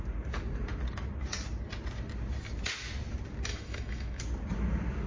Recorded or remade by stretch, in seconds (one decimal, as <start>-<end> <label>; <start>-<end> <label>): 0.0-3.5 recorded; 3.5-4.2 remade; 4.2-5.1 recorded